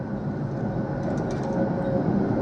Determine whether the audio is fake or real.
real